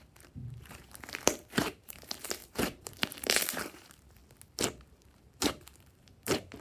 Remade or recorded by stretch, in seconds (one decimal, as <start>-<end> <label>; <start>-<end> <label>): 0.0-4.2 remade; 4.2-4.8 recorded; 4.8-6.6 remade